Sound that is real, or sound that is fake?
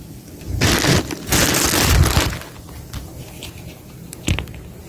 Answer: real